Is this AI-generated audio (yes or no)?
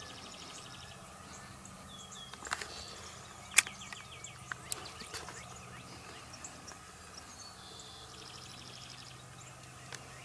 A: no